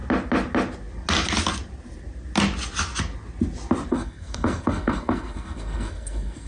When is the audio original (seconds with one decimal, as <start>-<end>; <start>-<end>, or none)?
0.0-3.9